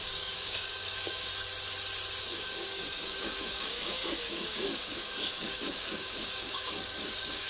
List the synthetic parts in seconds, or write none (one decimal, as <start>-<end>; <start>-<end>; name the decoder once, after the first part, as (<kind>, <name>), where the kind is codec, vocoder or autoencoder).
0.0-1.3 (codec, DAC); 2.2-7.5

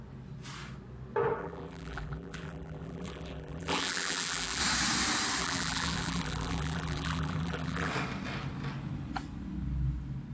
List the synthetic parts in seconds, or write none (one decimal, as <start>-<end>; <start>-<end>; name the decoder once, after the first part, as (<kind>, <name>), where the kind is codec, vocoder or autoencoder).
1.4-4.6 (vocoder, BigVGAN v2); 5.4-7.9

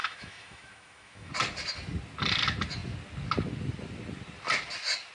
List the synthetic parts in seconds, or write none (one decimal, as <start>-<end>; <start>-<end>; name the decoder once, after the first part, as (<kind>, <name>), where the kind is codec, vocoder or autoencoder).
0.0-1.3 (autoencoder, DAC-VAE)

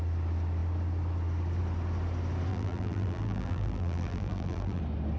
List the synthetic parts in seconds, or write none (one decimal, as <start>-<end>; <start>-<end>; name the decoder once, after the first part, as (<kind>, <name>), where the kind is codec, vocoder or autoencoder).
2.5-4.8 (vocoder, BigVGAN v2)

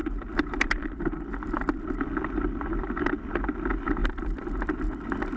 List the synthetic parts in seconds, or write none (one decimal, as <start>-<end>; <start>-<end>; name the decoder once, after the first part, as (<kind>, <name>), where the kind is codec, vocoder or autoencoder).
4.0-4.7 (vocoder, BigVGAN v2)

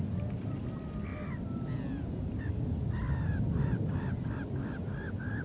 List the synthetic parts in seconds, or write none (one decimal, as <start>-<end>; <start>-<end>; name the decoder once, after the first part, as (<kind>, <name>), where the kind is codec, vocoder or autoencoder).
none